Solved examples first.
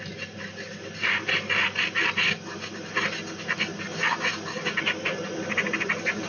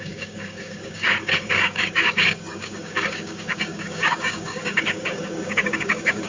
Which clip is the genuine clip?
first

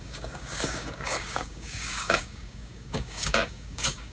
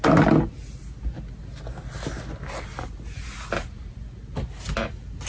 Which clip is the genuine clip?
second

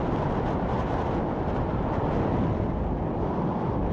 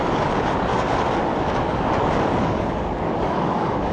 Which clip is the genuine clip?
first